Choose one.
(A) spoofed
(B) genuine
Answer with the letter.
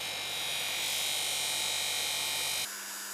B